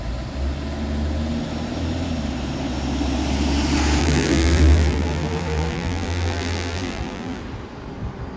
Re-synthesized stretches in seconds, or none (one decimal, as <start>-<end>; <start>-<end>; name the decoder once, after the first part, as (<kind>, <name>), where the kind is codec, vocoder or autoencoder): 4.0-7.4 (vocoder, BigVGAN v2)

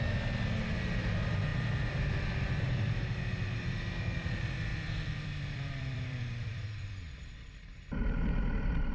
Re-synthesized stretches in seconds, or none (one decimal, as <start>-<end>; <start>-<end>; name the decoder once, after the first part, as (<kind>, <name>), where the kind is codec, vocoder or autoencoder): 4.7-6.9 (vocoder, BigVGAN v2)

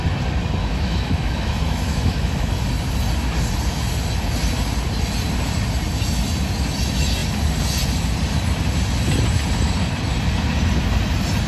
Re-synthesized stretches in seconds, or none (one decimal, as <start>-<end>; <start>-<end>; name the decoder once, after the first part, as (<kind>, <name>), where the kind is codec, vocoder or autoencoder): 0.6-2.6 (autoencoder, DAC-VAE)

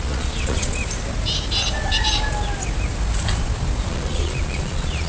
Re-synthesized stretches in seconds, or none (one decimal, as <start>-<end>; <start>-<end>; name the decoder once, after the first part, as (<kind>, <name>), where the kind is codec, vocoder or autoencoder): 0.0-0.8 (vocoder, Vocos); 3.9-5.1

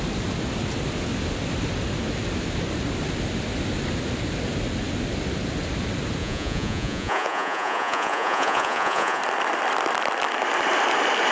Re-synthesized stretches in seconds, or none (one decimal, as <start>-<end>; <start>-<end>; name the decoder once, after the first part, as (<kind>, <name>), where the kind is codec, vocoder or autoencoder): 6.2-9.2 (vocoder, Vocos)